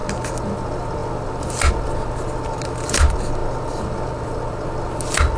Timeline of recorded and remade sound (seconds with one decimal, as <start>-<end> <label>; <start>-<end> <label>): 0.0-5.4 recorded